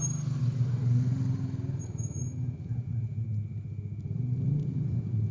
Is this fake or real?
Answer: real